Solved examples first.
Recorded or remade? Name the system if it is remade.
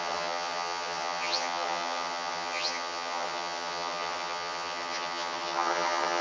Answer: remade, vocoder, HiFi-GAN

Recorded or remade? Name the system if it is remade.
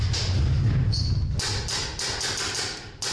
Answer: recorded